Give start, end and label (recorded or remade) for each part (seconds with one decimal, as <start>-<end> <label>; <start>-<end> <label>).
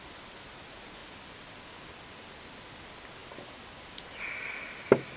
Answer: 0.0-5.2 recorded